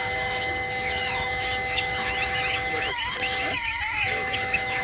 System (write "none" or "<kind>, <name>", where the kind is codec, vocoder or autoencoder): autoencoder, DAC-VAE